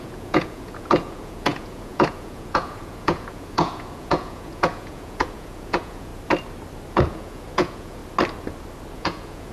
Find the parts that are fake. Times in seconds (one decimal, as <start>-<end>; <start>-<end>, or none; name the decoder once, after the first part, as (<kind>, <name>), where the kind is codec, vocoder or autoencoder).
0.0-6.1 (vocoder, Vocos); 6.9-8.0; 8.9-9.5